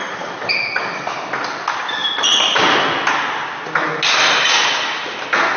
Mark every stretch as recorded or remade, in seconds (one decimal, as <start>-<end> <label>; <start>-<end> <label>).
0.0-5.6 recorded